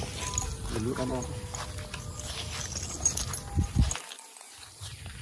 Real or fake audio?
real